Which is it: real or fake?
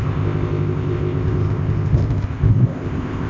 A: fake